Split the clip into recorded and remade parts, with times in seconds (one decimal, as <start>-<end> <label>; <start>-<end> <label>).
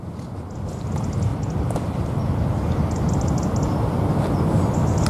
0.0-5.1 recorded